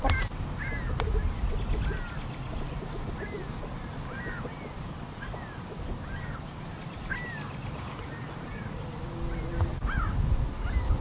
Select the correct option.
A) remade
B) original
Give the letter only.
B